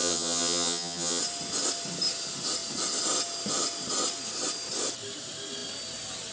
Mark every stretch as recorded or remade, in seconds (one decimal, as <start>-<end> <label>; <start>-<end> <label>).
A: 0.0-1.2 remade; 1.2-6.3 recorded